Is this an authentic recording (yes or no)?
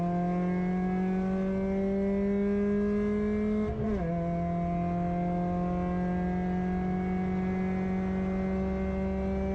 yes